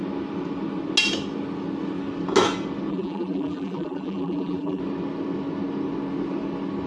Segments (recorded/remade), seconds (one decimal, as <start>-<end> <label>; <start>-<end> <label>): 0.0-2.9 recorded; 2.9-4.8 remade; 4.8-6.9 recorded